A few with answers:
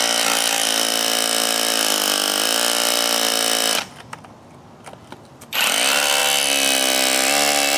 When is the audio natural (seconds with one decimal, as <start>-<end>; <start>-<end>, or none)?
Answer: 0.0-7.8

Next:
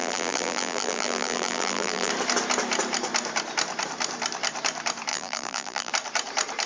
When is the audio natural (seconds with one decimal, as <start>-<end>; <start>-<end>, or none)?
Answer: 2.1-5.1; 5.9-6.7

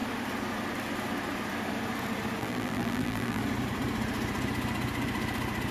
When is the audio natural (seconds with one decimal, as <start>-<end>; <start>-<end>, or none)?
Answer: 0.0-2.4; 3.4-5.7

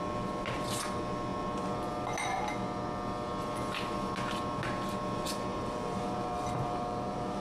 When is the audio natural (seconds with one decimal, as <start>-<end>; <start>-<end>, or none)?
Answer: 0.0-5.5

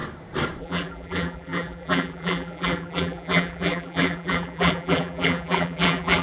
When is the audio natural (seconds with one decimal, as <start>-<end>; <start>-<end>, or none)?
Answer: 0.0-0.6

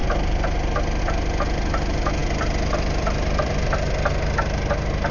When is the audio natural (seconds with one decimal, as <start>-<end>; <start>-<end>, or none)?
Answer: 0.0-2.2; 4.3-5.1

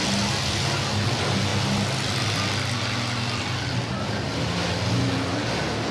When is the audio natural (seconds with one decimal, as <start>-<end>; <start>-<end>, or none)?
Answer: 0.0-5.9